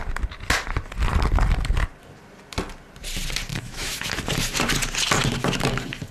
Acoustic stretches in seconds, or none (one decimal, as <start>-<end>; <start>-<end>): 0.0-3.5; 4.1-6.1